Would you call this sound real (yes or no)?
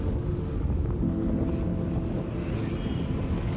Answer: yes